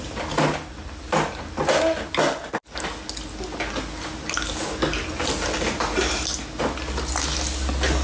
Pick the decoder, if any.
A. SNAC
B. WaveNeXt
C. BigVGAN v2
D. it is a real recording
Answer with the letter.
D